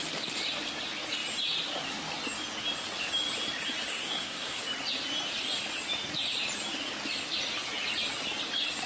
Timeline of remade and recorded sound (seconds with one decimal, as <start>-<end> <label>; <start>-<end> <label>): 0.0-3.9 recorded; 3.9-4.6 remade; 4.6-8.9 recorded